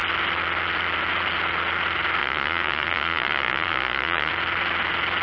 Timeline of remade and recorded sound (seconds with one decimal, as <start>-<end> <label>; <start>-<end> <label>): 0.0-2.2 recorded; 2.2-4.3 remade; 4.3-5.2 recorded